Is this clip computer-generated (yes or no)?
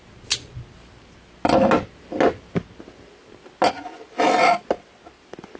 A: no